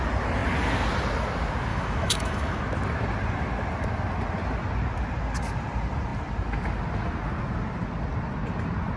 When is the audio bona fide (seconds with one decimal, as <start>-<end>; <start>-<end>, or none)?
0.0-1.7; 2.6-9.0